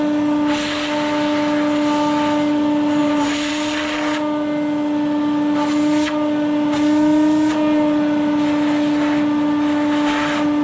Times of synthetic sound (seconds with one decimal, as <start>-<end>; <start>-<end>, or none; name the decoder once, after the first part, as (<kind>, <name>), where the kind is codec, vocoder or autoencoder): 3.0-3.5 (vocoder, BigVGAN v2)